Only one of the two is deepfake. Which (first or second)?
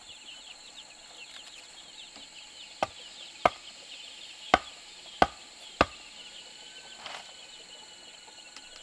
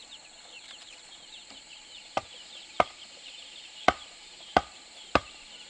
second